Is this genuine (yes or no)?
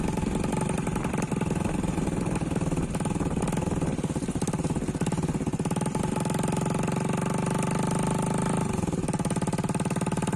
yes